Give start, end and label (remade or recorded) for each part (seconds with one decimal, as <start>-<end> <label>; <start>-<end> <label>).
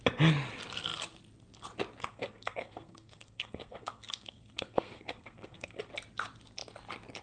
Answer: 0.0-2.1 recorded; 2.1-5.9 remade; 5.9-7.2 recorded